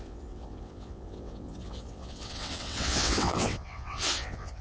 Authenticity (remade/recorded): remade